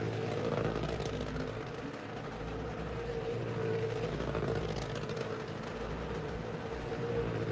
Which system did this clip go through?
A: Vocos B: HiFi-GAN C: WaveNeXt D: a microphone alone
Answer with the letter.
D